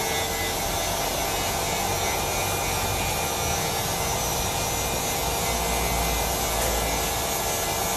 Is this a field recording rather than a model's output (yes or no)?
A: yes